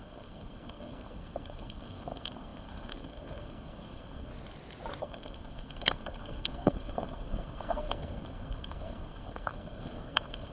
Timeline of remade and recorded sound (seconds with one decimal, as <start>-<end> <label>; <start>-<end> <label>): 0.0-4.3 remade; 4.3-5.0 recorded; 5.0-10.5 remade